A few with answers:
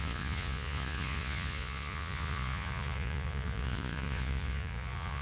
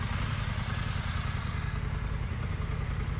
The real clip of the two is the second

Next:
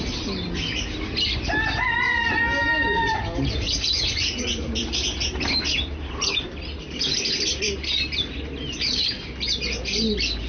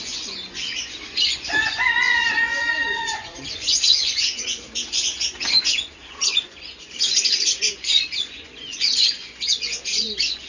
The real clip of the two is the first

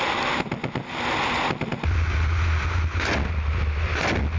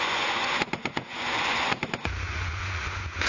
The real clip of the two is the first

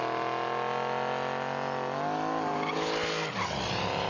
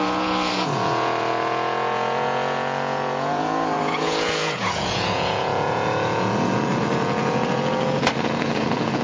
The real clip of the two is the first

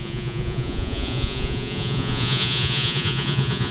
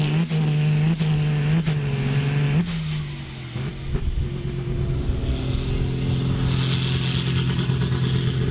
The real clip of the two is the second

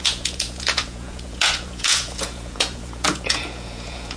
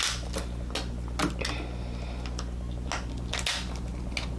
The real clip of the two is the second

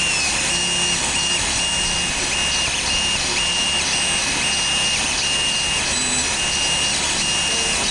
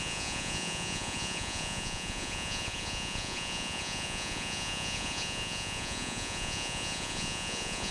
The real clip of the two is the first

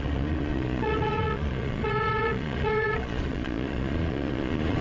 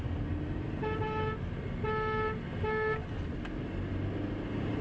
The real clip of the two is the second